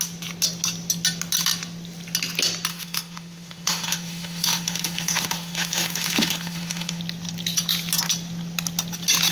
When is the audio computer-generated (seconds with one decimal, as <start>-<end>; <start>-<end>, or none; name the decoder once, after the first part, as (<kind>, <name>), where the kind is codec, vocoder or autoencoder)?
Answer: 2.7-7.0 (autoencoder, DAC-VAE)